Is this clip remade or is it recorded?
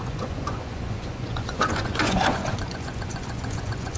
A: remade